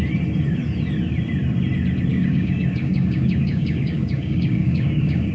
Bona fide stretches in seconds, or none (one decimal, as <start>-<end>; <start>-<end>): 0.0-2.1